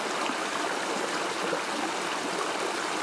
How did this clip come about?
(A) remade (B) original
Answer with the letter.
B